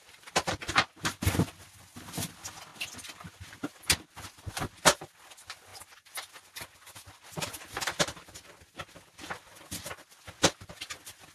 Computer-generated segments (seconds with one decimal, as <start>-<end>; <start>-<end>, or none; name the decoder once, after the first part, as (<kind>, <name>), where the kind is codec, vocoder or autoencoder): none